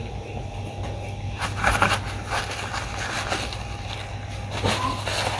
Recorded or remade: recorded